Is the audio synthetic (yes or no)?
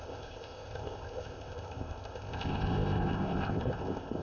yes